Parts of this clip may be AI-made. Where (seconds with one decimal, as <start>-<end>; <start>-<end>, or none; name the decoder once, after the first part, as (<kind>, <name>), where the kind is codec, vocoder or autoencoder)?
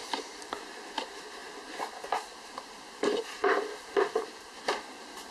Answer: 0.0-0.7 (vocoder, BigVGAN v2); 1.4-4.6